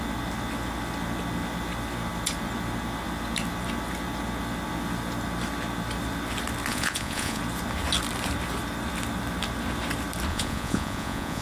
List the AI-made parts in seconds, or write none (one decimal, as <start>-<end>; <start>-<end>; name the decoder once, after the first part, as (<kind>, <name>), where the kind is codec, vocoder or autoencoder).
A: 6.7-7.4 (vocoder, Vocos); 10.3-11.4